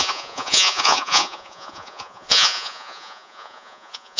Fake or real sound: fake